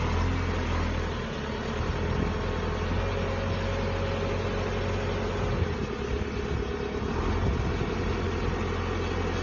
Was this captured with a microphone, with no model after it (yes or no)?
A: yes